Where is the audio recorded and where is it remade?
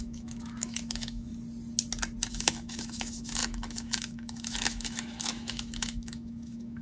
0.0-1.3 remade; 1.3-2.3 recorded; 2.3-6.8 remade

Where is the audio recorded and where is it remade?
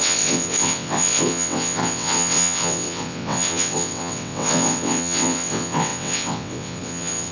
0.0-7.3 remade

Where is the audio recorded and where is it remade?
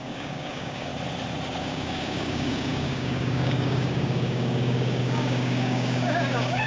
0.0-0.9 remade; 0.9-1.6 recorded; 1.6-6.7 remade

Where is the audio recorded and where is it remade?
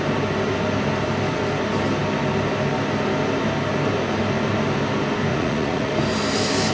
0.0-5.3 recorded; 5.3-5.9 remade; 5.9-6.7 recorded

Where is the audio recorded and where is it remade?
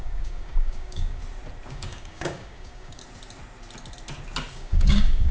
0.0-1.2 remade; 1.2-1.7 recorded; 1.7-3.0 remade; 3.0-4.5 recorded; 4.5-5.3 remade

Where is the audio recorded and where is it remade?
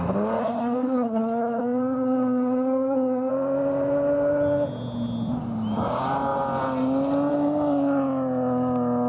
0.0-0.4 recorded; 0.4-3.3 remade; 3.3-9.1 recorded